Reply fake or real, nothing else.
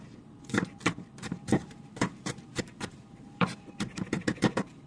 fake